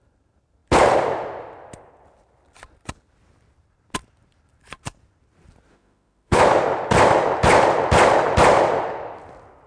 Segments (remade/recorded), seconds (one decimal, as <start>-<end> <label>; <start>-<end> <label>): 0.0-5.7 recorded; 5.7-6.4 remade; 6.4-9.7 recorded